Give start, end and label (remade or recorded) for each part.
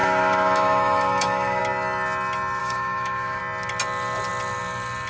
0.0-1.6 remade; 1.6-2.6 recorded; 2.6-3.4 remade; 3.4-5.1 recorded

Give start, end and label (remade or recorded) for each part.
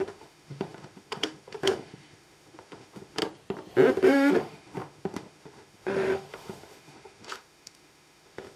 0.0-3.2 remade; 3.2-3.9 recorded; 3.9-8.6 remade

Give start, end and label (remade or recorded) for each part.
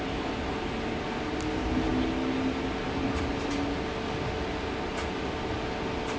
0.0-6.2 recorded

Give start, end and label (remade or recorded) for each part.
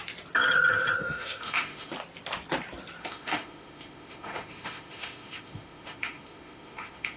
0.0-1.0 recorded; 1.0-1.9 remade; 1.9-3.0 recorded; 3.0-7.2 remade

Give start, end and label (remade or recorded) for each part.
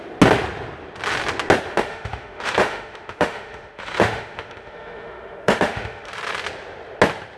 0.0-1.7 recorded; 1.7-6.1 remade; 6.1-7.4 recorded